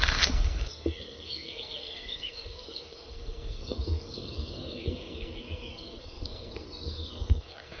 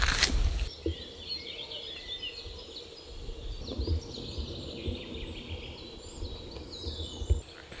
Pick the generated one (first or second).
first